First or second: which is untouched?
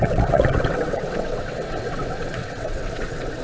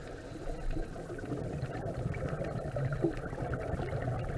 second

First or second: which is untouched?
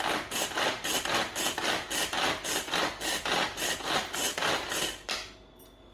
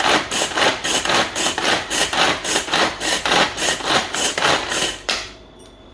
first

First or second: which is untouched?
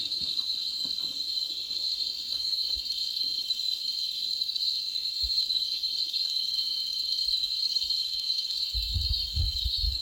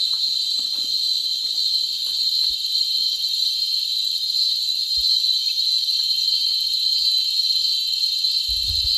second